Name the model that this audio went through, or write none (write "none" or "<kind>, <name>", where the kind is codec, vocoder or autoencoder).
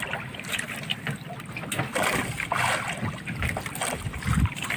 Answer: none